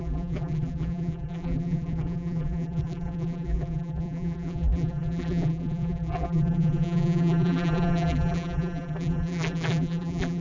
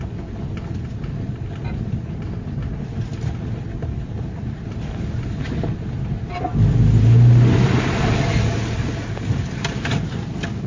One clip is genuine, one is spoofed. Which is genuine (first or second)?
second